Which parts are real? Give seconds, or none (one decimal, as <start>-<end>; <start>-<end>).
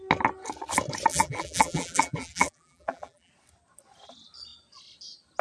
0.0-1.1; 3.3-5.4